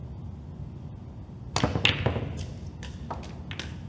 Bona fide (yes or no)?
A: yes